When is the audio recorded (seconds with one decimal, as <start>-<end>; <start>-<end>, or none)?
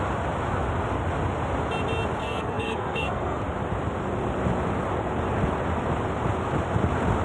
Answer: 0.0-2.2; 3.4-7.2